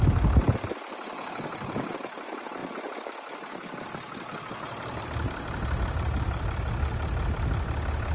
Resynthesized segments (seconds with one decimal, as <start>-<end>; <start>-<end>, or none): none